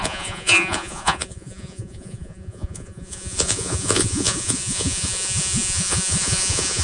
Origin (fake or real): fake